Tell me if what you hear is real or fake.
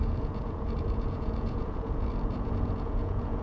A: fake